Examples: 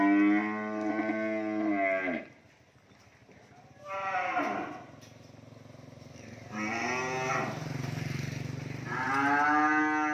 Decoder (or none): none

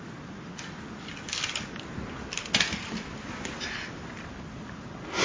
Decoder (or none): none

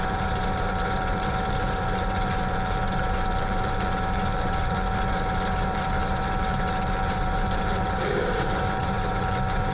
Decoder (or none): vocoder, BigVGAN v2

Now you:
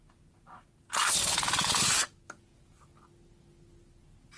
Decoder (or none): none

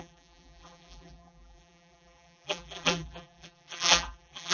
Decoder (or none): vocoder, BigVGAN v2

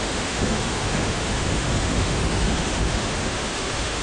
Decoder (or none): autoencoder, DAC-VAE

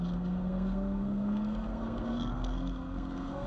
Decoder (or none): codec, SNAC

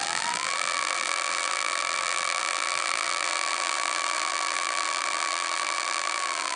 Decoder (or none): vocoder, BigVGAN v2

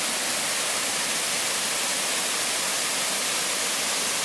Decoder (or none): none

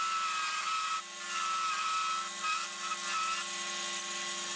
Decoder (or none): none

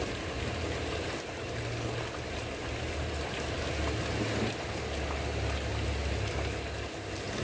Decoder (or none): none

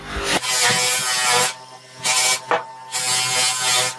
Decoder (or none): none